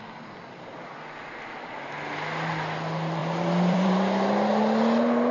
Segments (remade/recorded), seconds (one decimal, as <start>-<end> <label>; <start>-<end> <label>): 0.0-3.2 recorded; 3.2-4.3 remade; 4.3-5.3 recorded